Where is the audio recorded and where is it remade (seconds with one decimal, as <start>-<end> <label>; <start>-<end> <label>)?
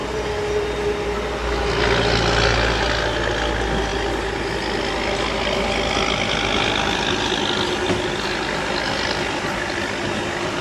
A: 0.0-10.6 recorded